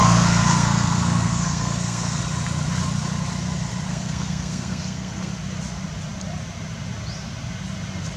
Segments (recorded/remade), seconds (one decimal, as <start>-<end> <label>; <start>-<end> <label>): 0.0-2.2 remade; 2.2-3.9 recorded; 3.9-5.3 remade; 5.3-8.2 recorded